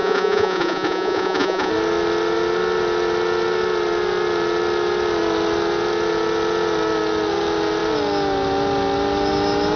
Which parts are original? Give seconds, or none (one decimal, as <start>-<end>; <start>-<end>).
1.7-9.8

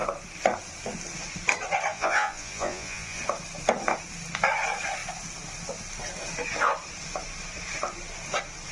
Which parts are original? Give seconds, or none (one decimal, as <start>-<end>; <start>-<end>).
0.0-1.9; 3.2-8.7

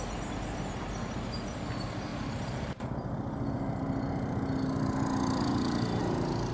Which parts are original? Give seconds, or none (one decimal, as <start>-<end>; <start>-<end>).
0.0-6.5

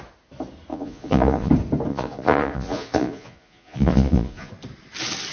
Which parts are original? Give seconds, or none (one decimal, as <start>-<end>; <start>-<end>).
0.0-0.7; 1.5-1.9; 4.5-5.3

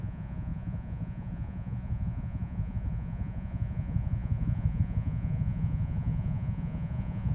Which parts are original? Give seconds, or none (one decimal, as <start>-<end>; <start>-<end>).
none